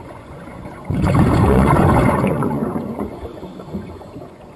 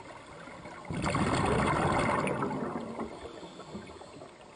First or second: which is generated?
first